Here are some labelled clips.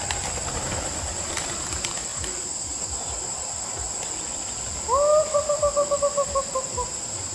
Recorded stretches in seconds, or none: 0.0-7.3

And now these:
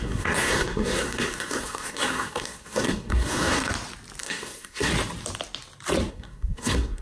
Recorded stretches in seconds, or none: 3.7-4.2; 4.9-6.1

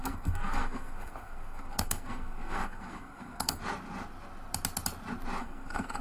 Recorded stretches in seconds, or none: 3.6-5.4

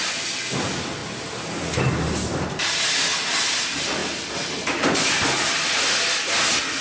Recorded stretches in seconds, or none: 0.0-6.8